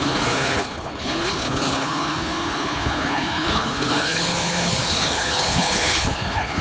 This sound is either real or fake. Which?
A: fake